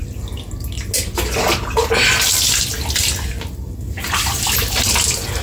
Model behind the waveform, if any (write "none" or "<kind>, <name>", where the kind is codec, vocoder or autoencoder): none